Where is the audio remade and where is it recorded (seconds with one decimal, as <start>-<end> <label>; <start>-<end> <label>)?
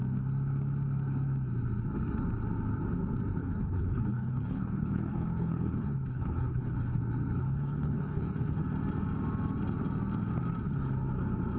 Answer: 0.0-3.4 recorded; 3.4-7.0 remade; 7.0-7.4 recorded; 7.4-8.6 remade; 8.6-11.6 recorded